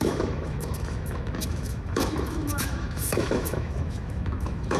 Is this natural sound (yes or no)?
no